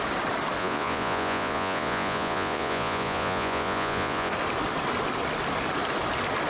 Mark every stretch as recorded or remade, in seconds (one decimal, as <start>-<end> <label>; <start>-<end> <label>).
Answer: 0.0-0.6 recorded; 0.6-4.3 remade; 4.3-6.5 recorded